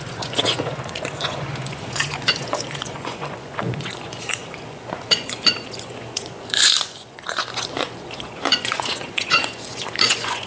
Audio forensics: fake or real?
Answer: fake